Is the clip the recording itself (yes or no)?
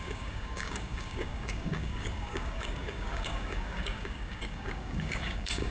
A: no